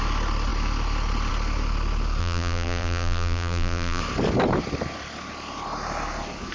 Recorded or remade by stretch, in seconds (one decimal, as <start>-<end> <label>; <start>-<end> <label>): 0.0-2.2 recorded; 2.2-4.0 remade; 4.0-6.5 recorded